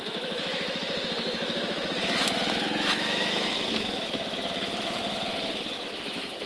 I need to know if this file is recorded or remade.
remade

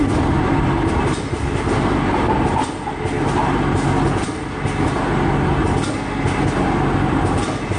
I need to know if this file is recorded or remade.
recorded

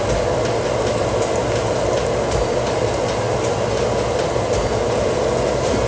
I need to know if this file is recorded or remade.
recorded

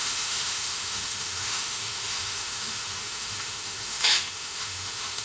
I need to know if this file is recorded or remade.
remade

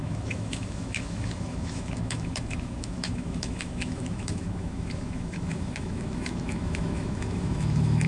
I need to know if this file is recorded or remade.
remade